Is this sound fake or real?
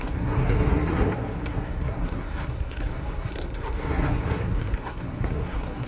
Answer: fake